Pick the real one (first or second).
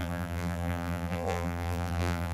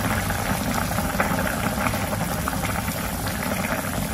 second